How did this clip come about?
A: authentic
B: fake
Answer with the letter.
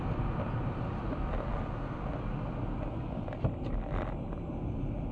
A